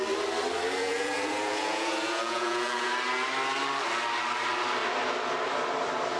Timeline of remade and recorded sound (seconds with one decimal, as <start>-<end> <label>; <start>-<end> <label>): 0.0-0.8 recorded; 0.8-2.9 remade; 2.9-6.2 recorded

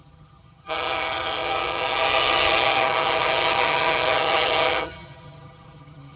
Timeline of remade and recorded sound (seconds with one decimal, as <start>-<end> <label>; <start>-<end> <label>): 0.0-6.2 remade

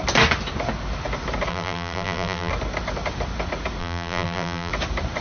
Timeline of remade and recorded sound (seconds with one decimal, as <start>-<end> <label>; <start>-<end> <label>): 0.0-1.5 recorded; 1.5-2.5 remade; 2.5-3.8 recorded; 3.8-4.7 remade; 4.7-5.2 recorded